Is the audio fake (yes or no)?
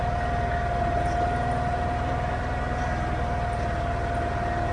no